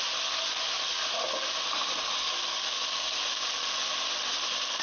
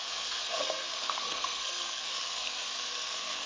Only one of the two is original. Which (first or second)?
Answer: first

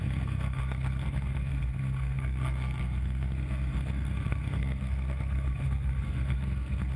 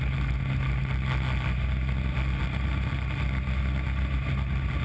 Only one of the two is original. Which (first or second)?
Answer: second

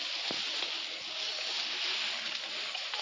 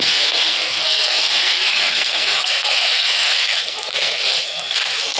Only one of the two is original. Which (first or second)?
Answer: first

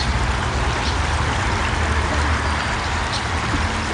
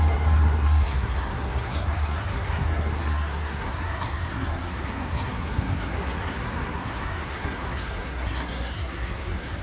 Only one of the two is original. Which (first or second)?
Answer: first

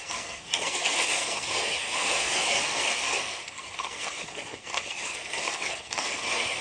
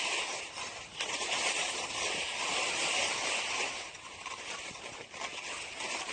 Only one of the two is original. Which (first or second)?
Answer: second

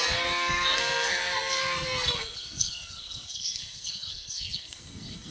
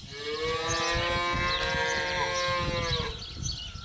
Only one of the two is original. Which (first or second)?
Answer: second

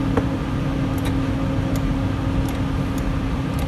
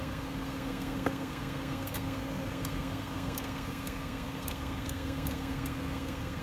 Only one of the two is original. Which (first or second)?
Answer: first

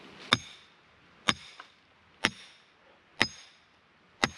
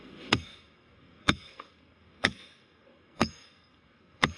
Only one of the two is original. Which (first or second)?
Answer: first